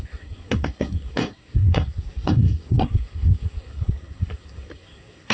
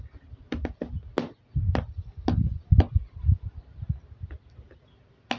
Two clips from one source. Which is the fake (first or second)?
first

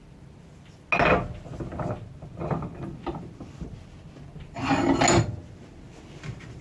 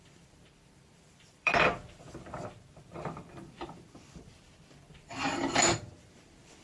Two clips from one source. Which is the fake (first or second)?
second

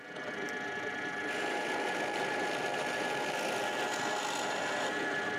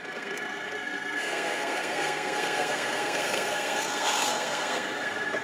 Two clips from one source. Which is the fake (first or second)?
second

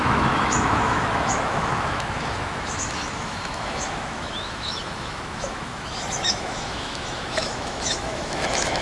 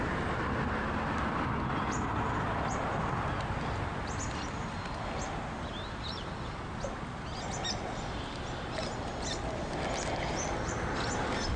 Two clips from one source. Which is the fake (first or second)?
first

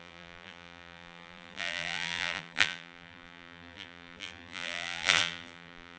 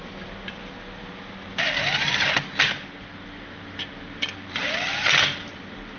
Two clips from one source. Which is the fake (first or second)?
first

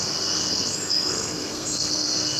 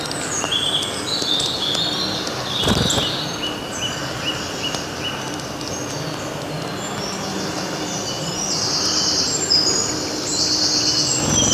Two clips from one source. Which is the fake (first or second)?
first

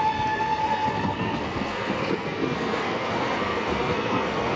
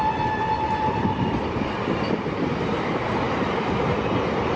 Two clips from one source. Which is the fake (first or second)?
first